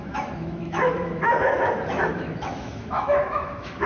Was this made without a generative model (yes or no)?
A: no